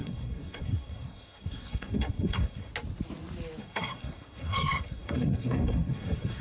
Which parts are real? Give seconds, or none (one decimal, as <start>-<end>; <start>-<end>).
2.7-3.6